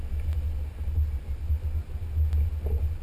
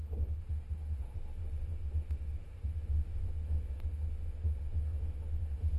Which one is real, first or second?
first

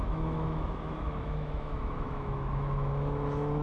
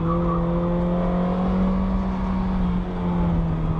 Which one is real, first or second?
second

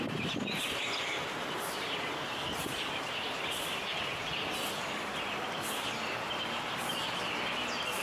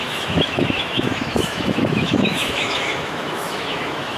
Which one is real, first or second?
first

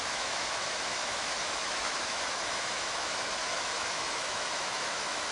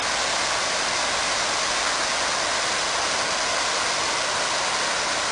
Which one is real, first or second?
second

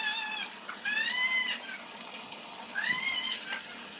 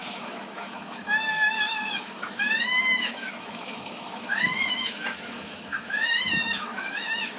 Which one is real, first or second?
first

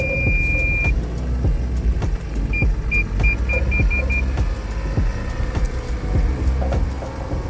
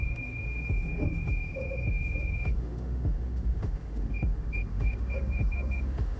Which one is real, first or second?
first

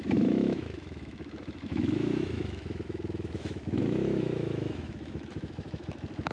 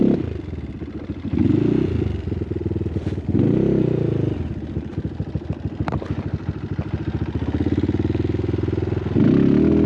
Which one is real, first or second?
second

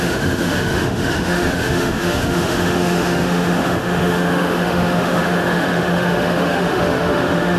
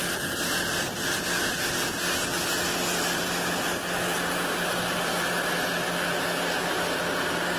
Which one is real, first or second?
second